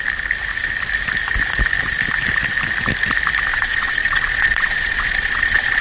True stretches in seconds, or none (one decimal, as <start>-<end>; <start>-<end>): 0.0-3.5